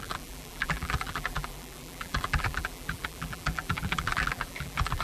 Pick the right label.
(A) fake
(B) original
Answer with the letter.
A